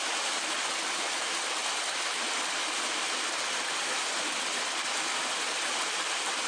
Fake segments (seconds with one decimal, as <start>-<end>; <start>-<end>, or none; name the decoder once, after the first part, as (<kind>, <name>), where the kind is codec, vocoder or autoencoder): none